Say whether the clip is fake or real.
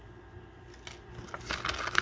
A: real